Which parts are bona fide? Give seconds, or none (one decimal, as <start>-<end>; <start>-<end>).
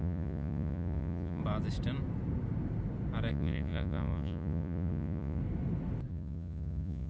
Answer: 1.4-3.3; 5.4-6.1